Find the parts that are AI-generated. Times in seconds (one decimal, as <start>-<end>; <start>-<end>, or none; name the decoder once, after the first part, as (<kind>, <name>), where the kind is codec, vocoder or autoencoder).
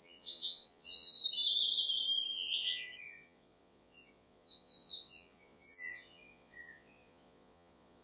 0.0-1.2 (vocoder, Vocos); 2.3-8.0